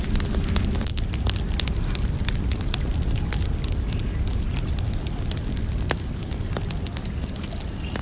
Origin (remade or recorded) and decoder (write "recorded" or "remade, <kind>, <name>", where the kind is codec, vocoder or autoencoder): recorded